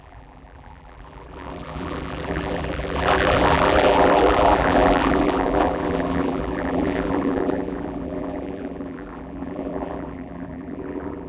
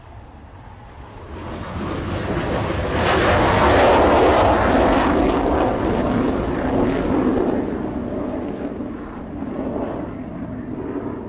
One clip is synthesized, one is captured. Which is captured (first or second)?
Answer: second